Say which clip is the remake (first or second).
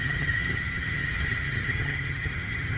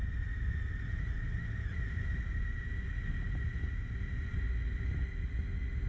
first